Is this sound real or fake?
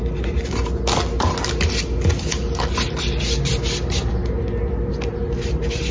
real